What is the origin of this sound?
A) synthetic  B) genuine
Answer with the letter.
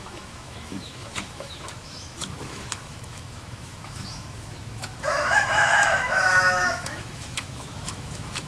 A